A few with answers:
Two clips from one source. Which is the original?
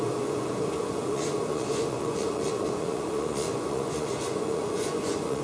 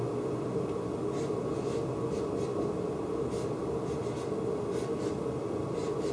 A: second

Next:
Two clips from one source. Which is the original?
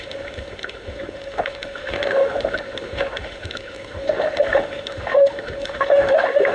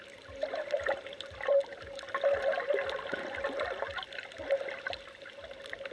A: second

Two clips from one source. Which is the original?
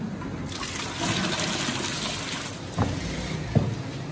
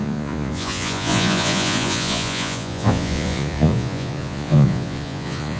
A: first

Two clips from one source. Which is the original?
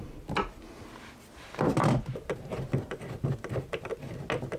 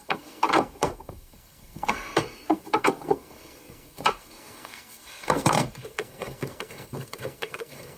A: first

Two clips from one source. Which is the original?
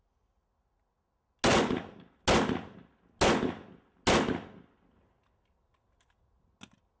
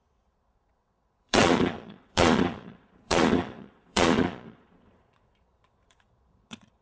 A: first